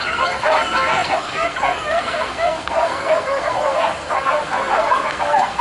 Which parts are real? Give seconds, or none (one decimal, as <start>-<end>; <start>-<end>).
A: none